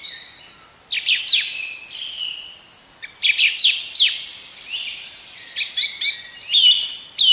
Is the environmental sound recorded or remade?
recorded